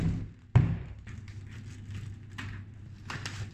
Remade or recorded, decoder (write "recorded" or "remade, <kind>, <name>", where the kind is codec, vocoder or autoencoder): recorded